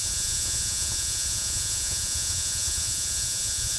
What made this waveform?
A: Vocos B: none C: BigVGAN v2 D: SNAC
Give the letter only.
A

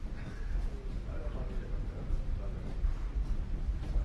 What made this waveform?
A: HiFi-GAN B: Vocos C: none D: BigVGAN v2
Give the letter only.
C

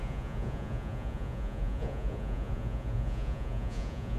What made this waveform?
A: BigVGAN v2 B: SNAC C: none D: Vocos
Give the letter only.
D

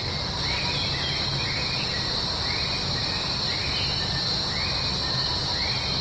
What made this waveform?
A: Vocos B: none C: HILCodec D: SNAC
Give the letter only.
B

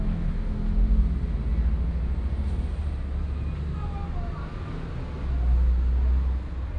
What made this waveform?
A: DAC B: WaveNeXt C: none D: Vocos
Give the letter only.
C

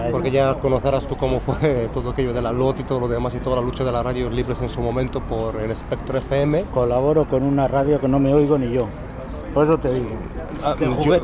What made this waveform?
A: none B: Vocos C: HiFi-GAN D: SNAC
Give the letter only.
A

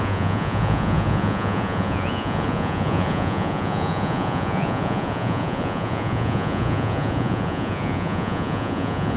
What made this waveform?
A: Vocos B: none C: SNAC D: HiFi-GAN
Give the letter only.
A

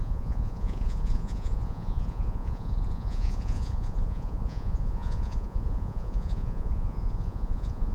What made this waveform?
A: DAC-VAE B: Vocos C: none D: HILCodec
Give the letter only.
B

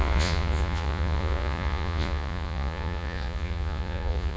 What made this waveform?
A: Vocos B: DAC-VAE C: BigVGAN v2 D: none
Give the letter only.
A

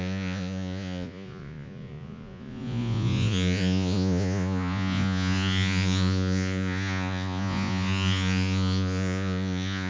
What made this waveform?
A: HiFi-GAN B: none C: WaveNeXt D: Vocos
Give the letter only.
D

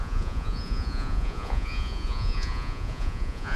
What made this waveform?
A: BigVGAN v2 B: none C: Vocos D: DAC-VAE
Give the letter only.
C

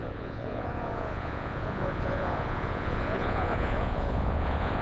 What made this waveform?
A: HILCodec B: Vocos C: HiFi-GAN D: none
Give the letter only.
B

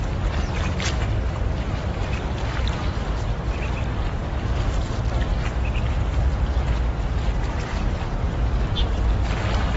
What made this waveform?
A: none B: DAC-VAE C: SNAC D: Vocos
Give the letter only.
A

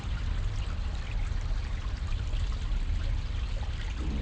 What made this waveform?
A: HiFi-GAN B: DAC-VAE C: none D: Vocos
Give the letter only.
C